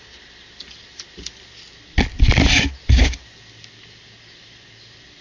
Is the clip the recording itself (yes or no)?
yes